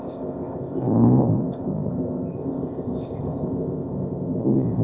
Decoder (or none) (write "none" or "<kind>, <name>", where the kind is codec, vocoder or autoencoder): codec, ZipCodec